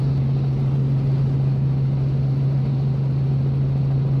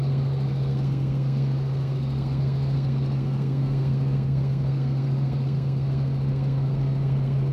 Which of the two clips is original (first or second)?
first